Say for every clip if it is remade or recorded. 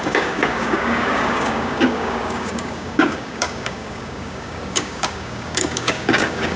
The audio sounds remade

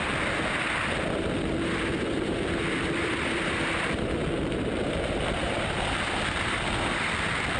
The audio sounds remade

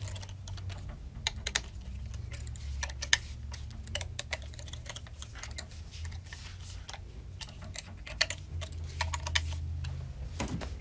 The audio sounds recorded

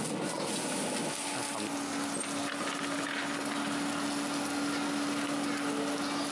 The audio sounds recorded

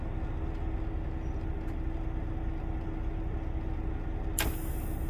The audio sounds recorded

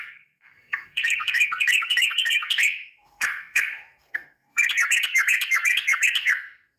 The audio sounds remade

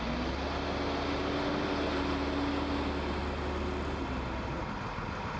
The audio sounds recorded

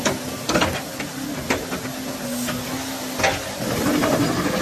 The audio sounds recorded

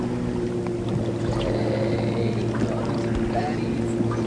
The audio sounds recorded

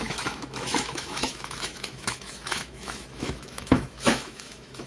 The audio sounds remade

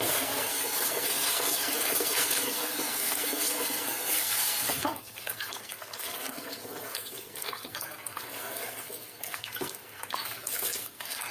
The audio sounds remade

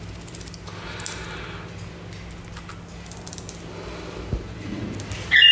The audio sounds recorded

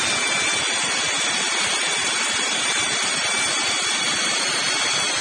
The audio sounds recorded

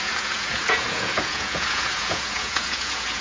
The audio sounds remade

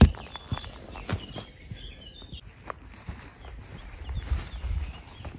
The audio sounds recorded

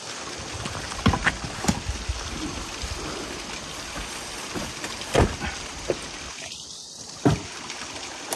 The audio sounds recorded